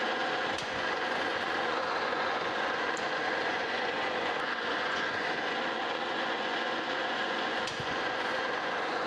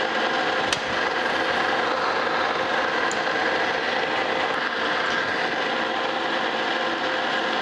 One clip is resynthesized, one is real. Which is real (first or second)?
second